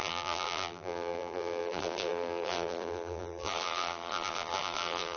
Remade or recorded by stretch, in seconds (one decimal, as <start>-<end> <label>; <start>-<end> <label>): 0.0-5.2 remade